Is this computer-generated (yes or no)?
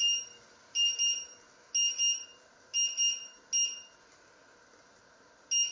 no